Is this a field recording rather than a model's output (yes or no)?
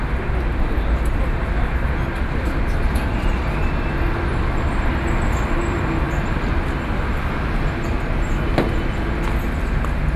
yes